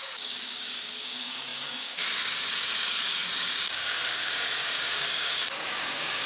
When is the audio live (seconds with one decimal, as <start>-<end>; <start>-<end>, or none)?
none